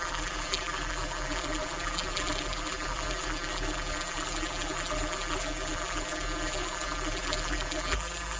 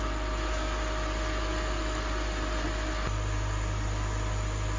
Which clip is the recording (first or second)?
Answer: second